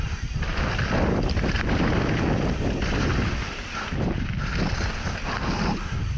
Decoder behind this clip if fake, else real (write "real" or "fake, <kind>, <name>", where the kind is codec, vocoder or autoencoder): real